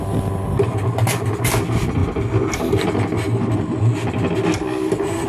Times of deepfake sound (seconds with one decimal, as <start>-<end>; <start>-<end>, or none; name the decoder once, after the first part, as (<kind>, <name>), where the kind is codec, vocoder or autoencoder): none